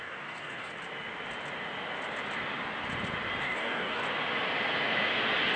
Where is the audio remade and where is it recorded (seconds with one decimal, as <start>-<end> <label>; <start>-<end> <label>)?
0.0-0.7 remade; 0.7-3.4 recorded; 3.4-4.0 remade; 4.0-5.6 recorded